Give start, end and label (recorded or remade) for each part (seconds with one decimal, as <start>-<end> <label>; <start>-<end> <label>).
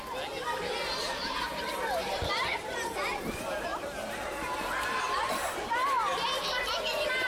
0.0-1.0 recorded; 1.0-7.3 remade